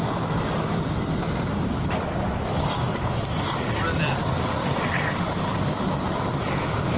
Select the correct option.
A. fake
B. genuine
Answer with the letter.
B